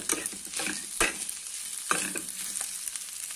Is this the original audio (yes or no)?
yes